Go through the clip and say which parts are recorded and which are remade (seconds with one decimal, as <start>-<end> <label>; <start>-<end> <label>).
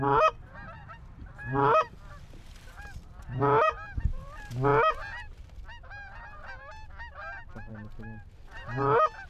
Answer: 0.0-0.8 recorded; 0.8-4.4 remade; 4.4-5.0 recorded; 5.0-5.6 remade; 5.6-9.3 recorded